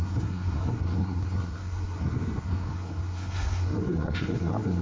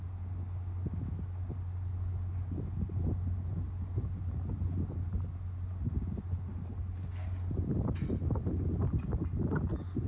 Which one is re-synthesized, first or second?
first